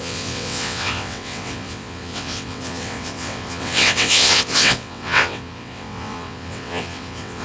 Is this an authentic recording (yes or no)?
no